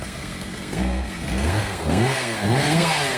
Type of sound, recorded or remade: remade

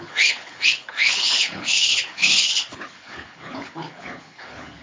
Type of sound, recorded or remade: remade